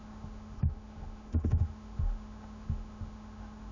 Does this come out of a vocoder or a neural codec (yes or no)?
yes